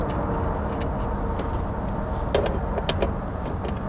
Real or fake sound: real